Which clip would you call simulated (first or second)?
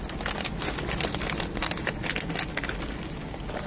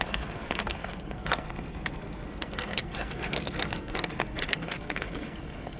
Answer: second